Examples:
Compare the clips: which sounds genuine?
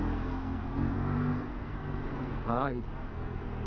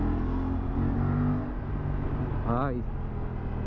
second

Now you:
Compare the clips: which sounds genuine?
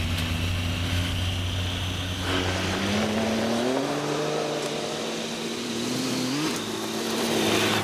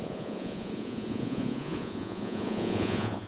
first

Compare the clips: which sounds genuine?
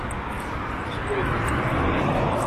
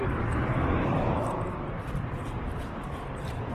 first